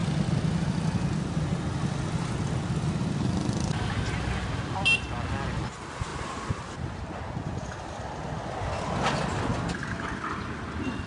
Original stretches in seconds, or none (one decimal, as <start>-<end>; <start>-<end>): 0.0-11.1